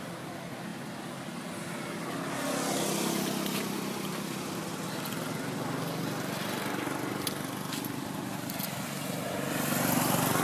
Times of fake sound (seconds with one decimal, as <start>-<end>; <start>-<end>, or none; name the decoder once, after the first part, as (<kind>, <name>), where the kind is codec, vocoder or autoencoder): none